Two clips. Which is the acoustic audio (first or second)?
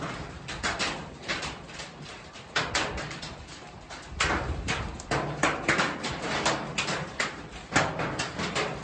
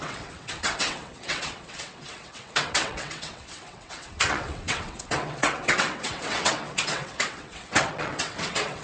first